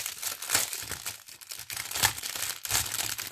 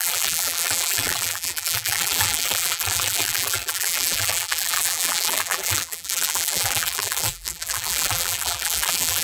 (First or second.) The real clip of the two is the first